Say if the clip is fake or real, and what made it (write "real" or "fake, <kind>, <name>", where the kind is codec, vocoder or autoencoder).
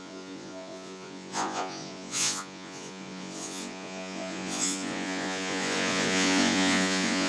fake, vocoder, Vocos